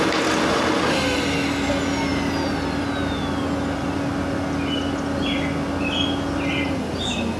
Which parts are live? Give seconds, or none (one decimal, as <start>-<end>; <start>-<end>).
0.0-7.4